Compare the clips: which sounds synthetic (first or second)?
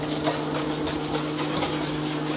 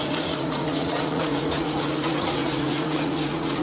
second